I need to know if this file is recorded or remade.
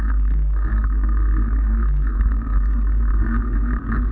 remade